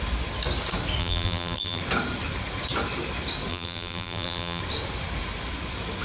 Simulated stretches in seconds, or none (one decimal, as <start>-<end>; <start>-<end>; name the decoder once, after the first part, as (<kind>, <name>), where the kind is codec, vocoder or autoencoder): 1.0-1.8 (vocoder, BigVGAN v2); 3.5-4.6